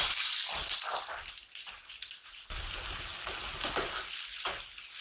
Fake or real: real